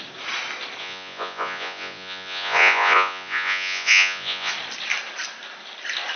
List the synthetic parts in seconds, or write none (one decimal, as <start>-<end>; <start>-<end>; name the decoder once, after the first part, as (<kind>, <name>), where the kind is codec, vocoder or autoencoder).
0.8-4.5 (vocoder, Vocos)